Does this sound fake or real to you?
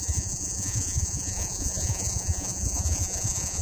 fake